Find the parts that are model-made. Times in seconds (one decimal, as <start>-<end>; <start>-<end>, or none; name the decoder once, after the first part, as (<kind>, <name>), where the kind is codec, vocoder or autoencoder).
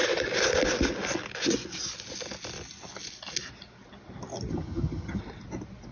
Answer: 4.5-5.2 (vocoder, HiFi-GAN)